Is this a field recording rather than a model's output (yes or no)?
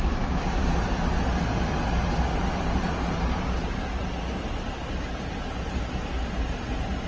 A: yes